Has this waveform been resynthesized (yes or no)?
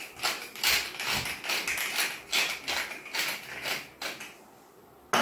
no